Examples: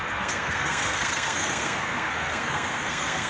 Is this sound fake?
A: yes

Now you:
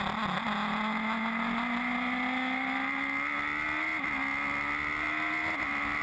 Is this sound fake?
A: no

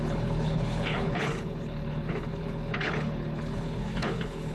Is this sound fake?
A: yes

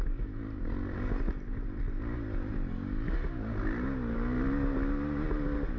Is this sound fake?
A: no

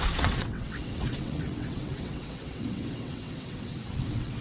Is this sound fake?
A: yes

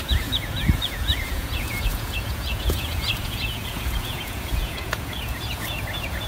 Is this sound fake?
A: yes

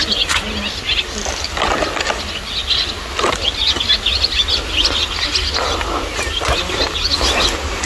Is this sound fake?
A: no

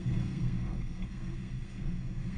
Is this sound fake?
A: yes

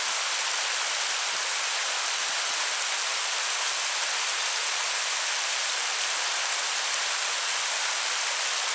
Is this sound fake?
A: no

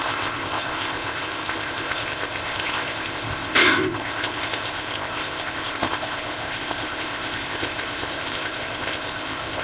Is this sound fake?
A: yes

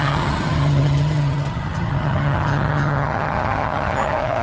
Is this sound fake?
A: yes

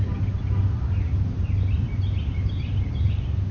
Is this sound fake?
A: no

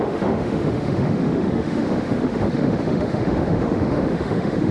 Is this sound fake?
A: yes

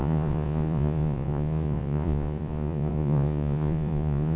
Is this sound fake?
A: yes